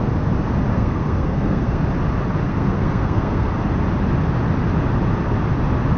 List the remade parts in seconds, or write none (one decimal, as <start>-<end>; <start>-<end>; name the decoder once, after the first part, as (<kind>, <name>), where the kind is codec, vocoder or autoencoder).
0.7-1.8 (codec, SNAC); 2.4-3.5